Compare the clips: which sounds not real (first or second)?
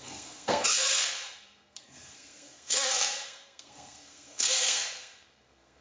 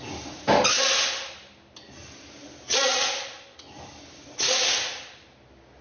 first